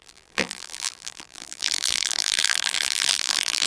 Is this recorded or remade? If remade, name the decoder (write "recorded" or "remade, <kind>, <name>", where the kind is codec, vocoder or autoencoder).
remade, vocoder, BigVGAN v2